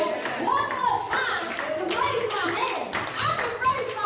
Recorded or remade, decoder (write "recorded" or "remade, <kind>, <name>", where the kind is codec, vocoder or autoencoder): remade, vocoder, BigVGAN v2